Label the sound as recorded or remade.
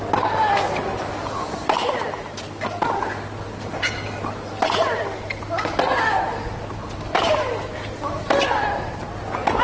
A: recorded